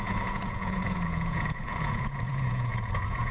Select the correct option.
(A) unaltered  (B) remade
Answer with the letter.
B